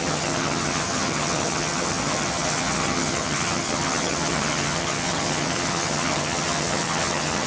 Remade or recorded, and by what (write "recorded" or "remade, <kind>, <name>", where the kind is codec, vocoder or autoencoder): remade, vocoder, HiFi-GAN